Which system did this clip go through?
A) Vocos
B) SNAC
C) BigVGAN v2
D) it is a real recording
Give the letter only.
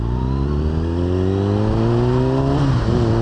D